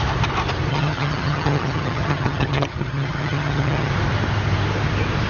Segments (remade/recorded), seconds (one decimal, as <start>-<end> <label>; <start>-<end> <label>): 0.0-0.7 recorded; 0.7-3.9 remade; 3.9-5.3 recorded